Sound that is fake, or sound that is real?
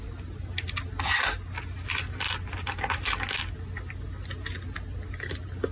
real